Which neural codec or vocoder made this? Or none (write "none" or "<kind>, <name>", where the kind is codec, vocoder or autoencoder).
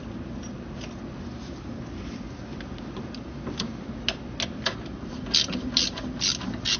none